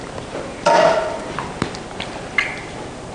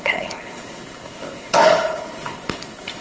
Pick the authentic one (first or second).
first